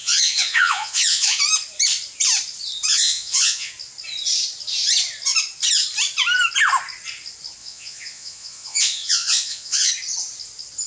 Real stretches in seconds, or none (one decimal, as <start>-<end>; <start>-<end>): 1.4-2.9; 3.7-7.6; 9.9-10.9

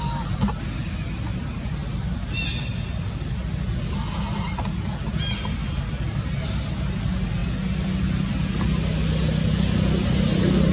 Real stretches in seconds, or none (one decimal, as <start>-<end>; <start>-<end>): 0.0-10.7

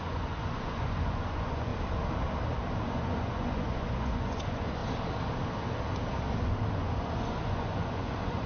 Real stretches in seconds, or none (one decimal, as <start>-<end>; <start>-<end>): 1.7-2.9; 4.8-6.7

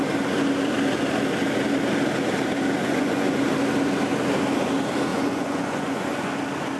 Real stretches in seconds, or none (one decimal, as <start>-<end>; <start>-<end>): 0.0-2.8; 3.4-5.1; 6.3-6.8

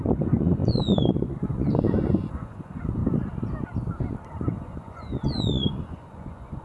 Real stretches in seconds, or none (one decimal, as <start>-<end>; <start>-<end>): 3.0-4.5

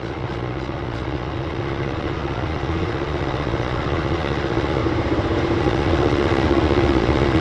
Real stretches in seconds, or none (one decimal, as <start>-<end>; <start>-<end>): 4.8-5.6

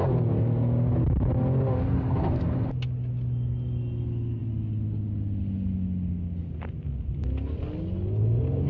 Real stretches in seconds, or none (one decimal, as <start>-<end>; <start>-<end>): 0.0-8.7